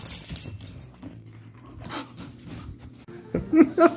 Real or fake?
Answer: real